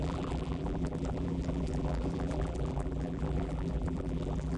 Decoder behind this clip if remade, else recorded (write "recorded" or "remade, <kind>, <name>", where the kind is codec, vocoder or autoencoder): remade, vocoder, BigVGAN v2